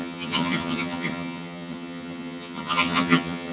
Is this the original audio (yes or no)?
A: no